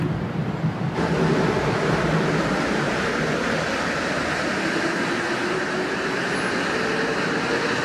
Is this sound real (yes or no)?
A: yes